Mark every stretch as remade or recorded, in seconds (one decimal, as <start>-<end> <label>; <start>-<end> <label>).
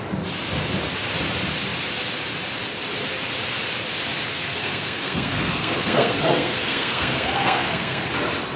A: 0.0-4.3 recorded; 4.3-8.1 remade; 8.1-8.6 recorded